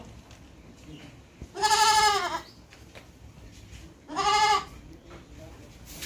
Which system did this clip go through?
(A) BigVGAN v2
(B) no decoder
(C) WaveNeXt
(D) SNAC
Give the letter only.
B